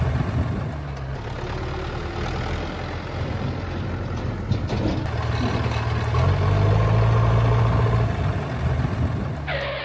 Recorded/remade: recorded